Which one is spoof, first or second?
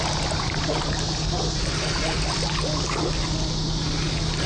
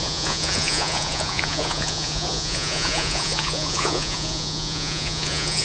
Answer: second